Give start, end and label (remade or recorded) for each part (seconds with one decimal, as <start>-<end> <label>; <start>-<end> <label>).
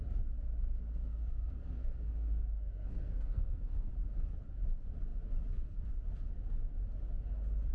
0.0-1.0 recorded; 1.0-3.9 remade; 3.9-7.7 recorded